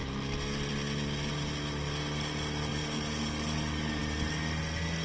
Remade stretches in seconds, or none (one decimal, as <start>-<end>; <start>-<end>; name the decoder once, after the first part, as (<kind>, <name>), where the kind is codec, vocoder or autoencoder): 2.7-4.0 (codec, DAC)

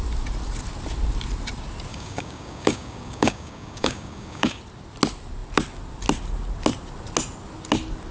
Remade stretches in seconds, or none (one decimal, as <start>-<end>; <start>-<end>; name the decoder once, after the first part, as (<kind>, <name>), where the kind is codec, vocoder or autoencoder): 1.9-4.6 (codec, DAC)

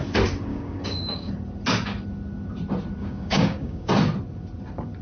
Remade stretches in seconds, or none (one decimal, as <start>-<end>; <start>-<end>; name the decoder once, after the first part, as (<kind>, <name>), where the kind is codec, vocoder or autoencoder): 0.5-1.3 (codec, DAC); 3.0-3.9

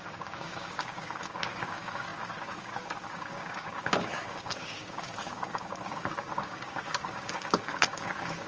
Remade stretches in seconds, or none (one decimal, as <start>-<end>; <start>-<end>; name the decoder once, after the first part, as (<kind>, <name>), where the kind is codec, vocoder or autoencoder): 0.0-8.5 (codec, DAC)

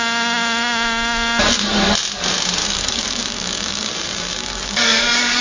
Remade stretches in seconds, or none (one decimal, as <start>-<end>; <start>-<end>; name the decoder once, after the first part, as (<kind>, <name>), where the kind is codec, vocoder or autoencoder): 2.6-3.9 (codec, DAC); 4.4-5.4

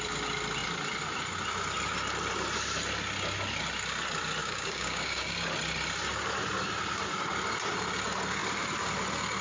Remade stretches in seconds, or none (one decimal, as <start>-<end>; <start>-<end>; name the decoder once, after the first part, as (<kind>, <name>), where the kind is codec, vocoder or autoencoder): 4.4-5.3 (codec, DAC)